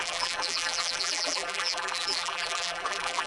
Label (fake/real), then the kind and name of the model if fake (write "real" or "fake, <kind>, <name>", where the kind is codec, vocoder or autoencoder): fake, vocoder, BigVGAN v2